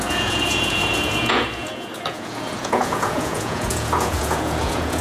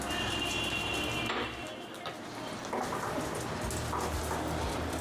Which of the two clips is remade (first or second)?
first